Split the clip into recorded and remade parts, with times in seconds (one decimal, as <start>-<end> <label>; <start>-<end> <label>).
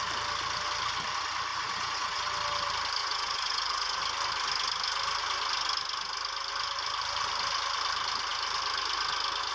0.0-1.5 recorded; 1.5-2.2 remade; 2.2-3.0 recorded; 3.0-4.0 remade; 4.0-9.5 recorded